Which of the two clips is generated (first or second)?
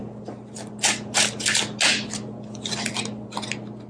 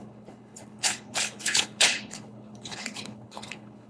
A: second